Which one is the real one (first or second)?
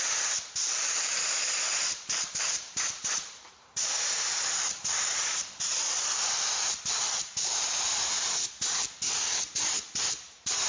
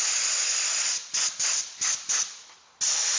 second